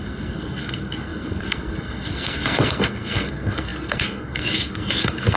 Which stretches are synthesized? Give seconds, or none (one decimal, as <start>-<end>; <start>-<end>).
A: 0.0-5.4